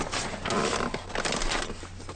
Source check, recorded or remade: recorded